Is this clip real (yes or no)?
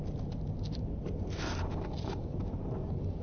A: yes